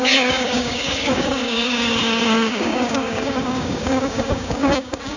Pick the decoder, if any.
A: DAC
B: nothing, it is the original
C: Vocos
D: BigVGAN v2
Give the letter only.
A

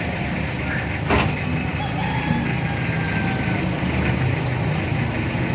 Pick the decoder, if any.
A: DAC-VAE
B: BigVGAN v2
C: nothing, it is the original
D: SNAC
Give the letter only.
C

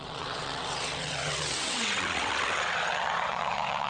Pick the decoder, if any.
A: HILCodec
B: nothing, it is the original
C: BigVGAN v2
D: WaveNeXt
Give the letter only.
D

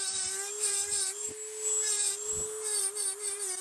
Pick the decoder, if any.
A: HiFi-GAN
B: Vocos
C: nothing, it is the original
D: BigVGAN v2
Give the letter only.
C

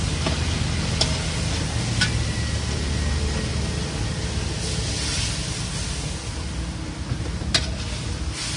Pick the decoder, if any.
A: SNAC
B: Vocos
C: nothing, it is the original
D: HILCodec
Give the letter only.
C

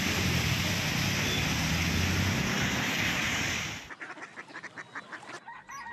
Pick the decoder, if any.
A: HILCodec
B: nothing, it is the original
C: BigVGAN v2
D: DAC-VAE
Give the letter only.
B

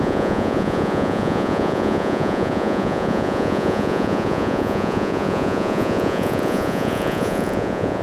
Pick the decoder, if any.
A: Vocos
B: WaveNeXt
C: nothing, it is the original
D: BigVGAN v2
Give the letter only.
A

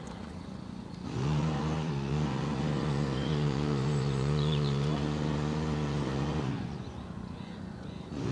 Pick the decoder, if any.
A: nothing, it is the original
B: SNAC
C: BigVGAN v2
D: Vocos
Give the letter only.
D